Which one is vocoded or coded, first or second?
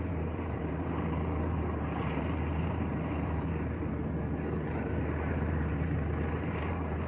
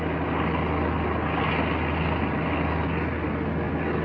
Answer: first